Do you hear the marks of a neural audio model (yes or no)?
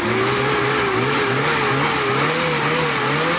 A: no